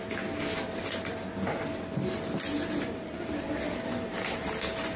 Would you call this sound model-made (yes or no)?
no